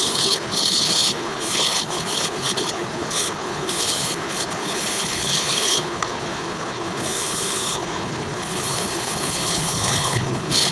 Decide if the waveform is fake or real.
fake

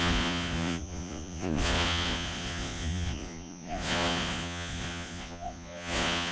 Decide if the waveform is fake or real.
fake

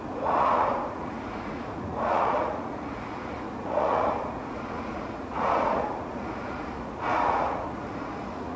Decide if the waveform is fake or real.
fake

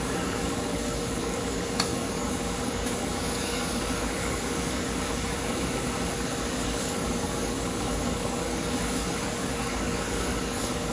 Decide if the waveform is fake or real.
fake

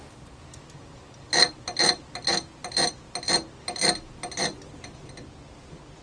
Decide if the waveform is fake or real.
real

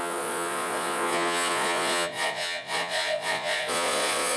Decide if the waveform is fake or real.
fake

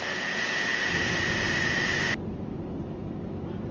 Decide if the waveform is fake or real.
real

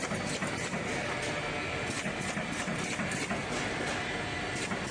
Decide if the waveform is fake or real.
real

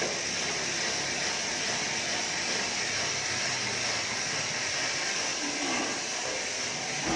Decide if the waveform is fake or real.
real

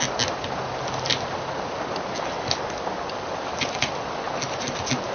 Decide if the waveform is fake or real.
real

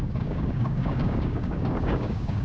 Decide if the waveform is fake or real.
fake